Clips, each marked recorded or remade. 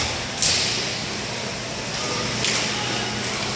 recorded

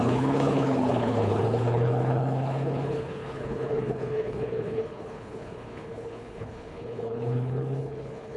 remade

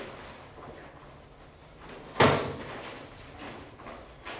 recorded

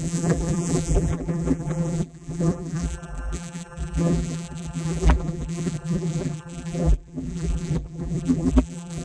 remade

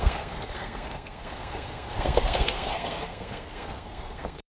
remade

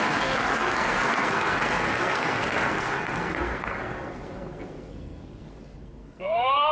remade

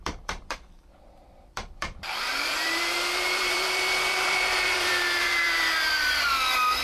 remade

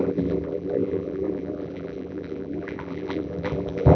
remade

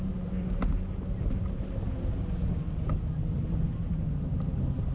recorded